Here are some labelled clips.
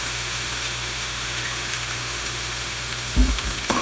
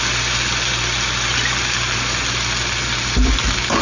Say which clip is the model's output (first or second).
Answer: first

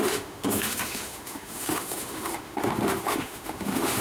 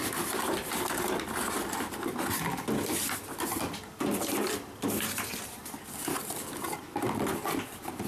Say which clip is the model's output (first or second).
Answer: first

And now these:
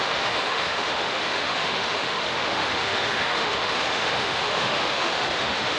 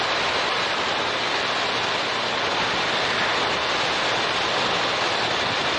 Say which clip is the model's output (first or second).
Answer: first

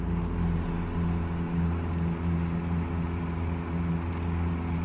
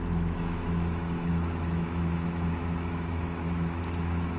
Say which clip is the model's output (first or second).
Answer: second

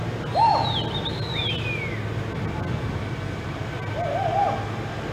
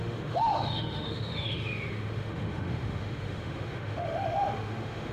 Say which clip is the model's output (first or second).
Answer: second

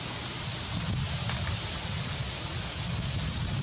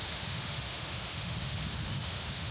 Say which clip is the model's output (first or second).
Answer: second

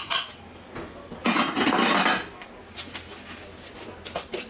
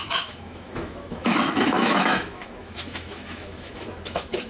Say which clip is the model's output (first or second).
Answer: second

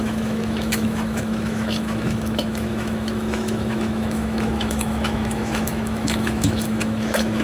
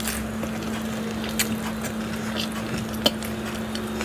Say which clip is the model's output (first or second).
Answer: first